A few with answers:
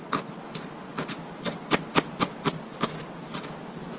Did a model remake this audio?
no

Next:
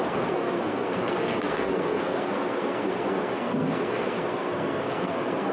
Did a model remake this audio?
yes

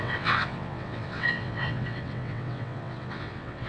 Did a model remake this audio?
yes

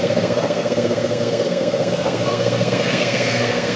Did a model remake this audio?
yes